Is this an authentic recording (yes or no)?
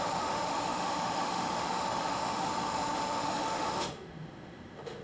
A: no